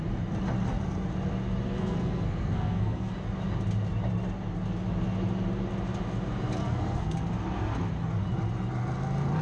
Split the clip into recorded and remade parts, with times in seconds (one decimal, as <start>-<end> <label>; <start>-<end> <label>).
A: 0.0-1.8 recorded; 1.8-3.1 remade; 3.1-6.6 recorded; 6.6-7.3 remade; 7.3-9.4 recorded